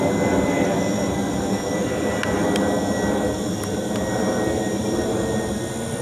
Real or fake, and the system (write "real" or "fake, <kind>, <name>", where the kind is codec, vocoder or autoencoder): real